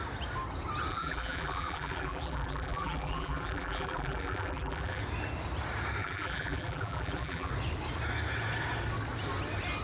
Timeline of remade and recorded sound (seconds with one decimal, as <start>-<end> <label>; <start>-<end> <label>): 0.0-0.9 recorded; 0.9-5.0 remade; 5.0-6.0 recorded; 6.0-7.5 remade; 7.5-9.8 recorded